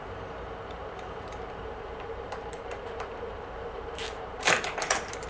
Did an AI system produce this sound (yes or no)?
yes